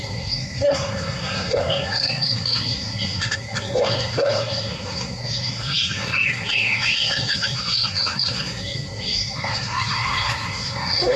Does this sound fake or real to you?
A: fake